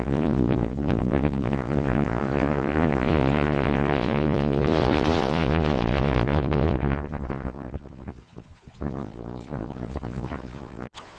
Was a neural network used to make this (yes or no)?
yes